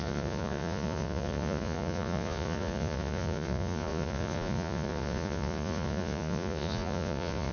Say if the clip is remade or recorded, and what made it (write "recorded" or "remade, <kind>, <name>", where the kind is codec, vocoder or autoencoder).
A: remade, vocoder, Vocos